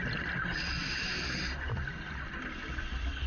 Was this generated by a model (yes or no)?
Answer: no